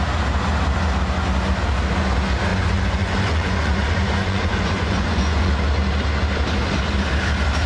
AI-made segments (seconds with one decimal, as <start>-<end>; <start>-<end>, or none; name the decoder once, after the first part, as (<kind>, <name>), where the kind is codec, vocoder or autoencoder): 2.5-5.5 (vocoder, Vocos)